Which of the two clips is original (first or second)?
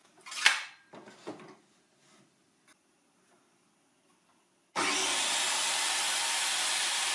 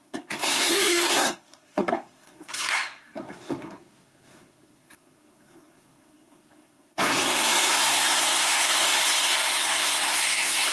first